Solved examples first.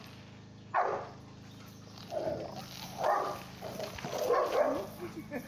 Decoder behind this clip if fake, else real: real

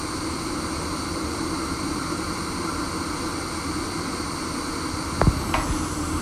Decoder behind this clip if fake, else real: fake, vocoder, BigVGAN v2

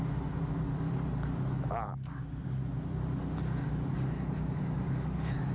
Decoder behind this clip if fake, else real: real